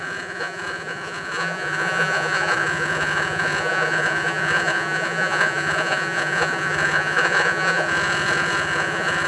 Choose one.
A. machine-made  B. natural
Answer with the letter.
A